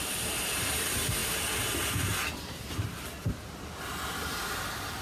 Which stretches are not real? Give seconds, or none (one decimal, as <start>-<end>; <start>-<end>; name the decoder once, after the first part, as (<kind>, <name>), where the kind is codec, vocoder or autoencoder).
none